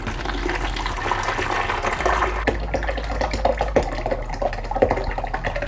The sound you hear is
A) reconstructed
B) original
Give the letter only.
B